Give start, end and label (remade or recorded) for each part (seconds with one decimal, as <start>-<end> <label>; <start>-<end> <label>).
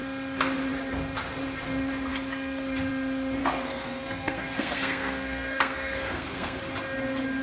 0.0-3.4 recorded; 3.4-6.6 remade; 6.6-7.4 recorded